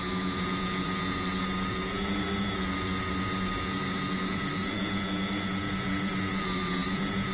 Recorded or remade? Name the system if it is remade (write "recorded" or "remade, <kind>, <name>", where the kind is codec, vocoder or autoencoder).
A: remade, vocoder, Vocos